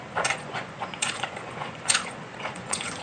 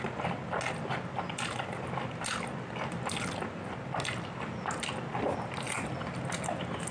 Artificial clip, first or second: first